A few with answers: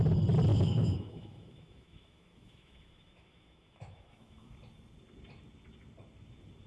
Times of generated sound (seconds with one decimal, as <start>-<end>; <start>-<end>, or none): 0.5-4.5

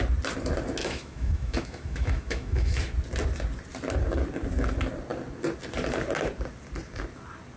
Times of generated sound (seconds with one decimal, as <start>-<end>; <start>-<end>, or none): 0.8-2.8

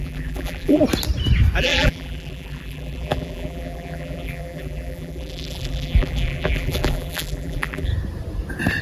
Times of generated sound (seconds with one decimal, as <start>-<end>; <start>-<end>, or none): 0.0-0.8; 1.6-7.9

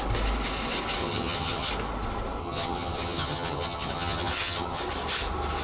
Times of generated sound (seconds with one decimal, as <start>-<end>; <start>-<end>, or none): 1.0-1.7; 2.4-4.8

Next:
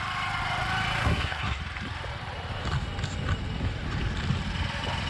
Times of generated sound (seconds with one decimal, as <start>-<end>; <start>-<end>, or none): 1.0-1.6

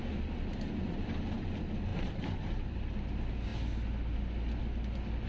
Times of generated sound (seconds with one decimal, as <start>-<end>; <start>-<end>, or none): 0.5-1.1; 1.9-2.5